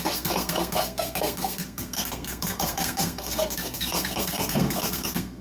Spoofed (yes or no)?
yes